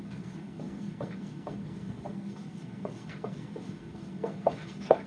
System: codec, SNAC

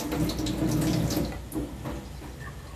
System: none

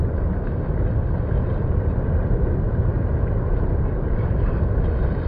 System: none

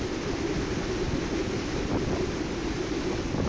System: none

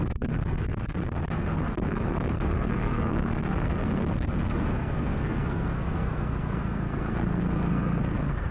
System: codec, SNAC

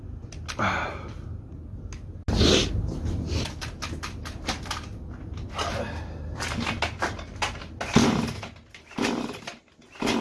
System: none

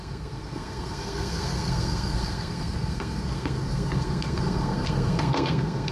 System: codec, SNAC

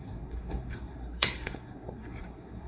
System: codec, SNAC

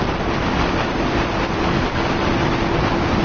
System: none